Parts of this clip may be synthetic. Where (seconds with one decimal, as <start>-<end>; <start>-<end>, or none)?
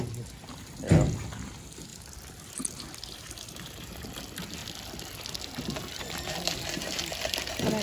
none